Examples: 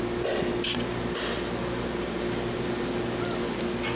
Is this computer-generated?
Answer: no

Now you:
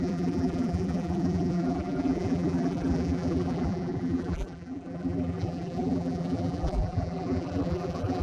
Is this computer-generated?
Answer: yes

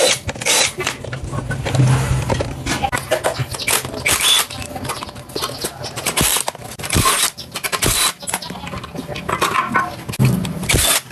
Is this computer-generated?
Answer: no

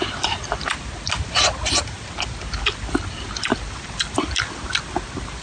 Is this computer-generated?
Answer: no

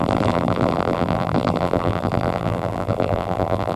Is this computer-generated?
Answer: yes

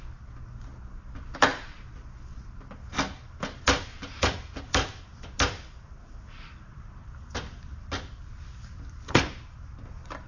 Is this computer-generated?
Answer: no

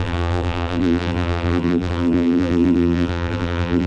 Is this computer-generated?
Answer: yes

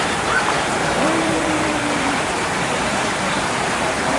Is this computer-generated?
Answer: yes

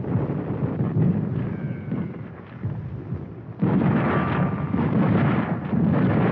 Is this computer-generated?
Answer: no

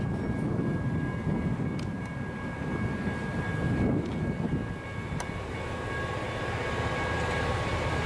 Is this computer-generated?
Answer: no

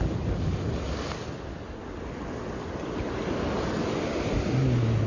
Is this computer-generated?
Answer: no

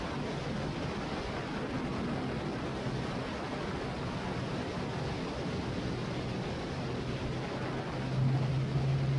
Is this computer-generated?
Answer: no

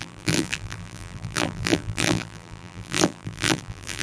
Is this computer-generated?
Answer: yes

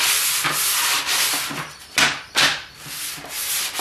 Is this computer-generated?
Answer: no